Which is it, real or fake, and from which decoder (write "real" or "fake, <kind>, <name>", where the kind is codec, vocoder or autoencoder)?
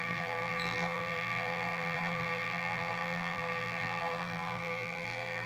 fake, vocoder, BigVGAN v2